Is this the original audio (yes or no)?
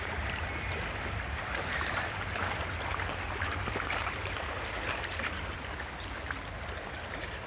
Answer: yes